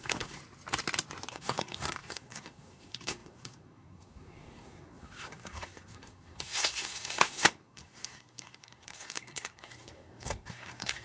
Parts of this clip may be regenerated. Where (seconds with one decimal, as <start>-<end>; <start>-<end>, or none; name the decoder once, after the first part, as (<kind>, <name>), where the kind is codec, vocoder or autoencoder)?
0.0-0.4 (codec, SNAC); 1.3-11.0